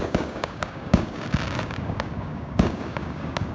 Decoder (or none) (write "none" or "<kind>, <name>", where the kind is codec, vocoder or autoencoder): codec, DAC